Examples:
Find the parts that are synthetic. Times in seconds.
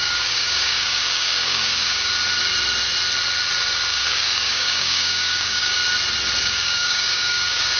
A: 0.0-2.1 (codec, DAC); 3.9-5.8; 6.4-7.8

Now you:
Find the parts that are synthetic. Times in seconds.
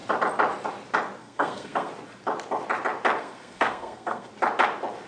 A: 1.2-1.9 (codec, SNAC); 3.2-4.3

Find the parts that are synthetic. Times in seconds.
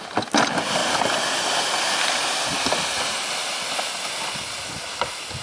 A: none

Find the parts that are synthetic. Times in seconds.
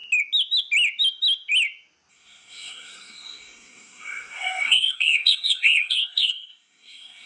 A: 2.1-7.3 (codec, SNAC)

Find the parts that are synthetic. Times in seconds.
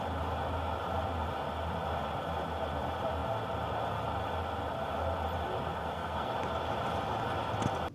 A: 5.8-6.3 (codec, SNAC)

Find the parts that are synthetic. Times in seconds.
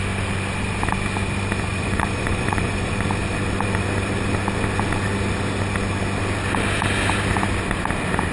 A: 1.7-2.9 (vocoder, Vocos)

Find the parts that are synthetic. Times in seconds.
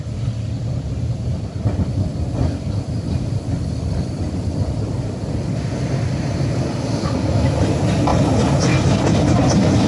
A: none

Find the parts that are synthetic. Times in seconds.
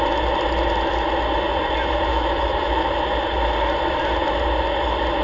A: 2.1-2.9 (autoencoder, DAC-VAE)